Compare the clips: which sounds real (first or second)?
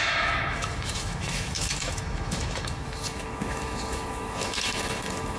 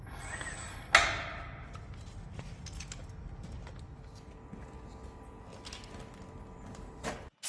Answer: second